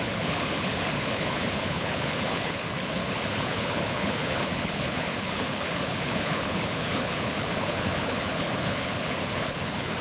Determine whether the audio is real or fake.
fake